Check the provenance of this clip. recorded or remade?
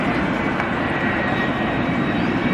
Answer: remade